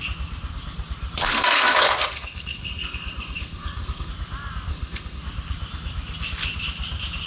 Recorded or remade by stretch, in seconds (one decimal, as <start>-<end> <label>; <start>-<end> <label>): 0.0-1.3 recorded; 1.3-4.1 remade; 4.1-4.7 recorded; 4.7-5.2 remade; 5.2-7.3 recorded